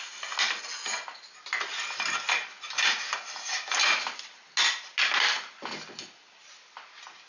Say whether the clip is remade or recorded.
recorded